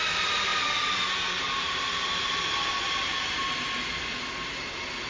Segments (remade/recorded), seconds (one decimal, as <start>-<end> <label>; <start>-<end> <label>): 0.0-5.1 recorded